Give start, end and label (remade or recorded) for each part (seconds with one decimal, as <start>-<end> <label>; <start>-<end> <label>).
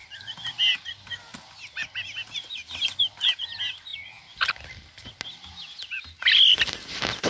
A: 0.0-7.3 recorded